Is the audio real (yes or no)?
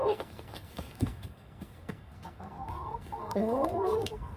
no